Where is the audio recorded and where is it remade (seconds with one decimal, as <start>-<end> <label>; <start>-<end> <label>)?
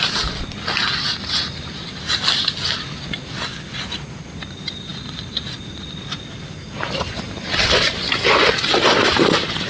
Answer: 0.0-9.7 recorded